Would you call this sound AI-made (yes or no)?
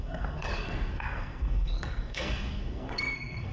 yes